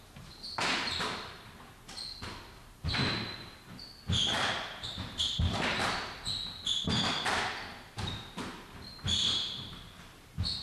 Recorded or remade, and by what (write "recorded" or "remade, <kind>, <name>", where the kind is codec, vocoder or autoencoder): remade, vocoder, BigVGAN v2